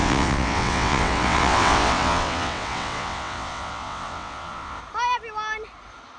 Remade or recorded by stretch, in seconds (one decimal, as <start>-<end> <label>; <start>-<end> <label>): 0.0-4.8 remade; 4.8-6.2 recorded